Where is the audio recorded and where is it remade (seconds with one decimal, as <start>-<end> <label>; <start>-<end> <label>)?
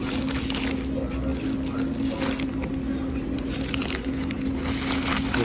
0.0-5.4 recorded